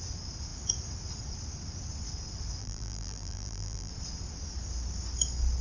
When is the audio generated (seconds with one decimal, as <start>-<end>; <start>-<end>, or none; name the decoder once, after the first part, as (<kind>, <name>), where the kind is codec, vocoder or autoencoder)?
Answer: 2.6-3.9 (vocoder, BigVGAN v2)